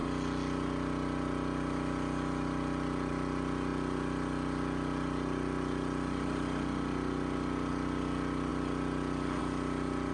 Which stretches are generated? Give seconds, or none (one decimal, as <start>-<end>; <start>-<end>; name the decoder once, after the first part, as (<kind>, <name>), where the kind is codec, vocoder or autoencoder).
none

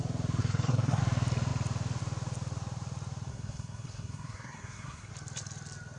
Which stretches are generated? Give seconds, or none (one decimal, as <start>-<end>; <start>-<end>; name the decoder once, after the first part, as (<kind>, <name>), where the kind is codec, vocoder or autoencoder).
0.4-1.0 (codec, SNAC); 3.3-5.1